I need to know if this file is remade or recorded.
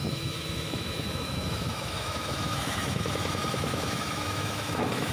remade